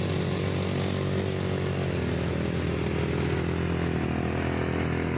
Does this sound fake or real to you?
real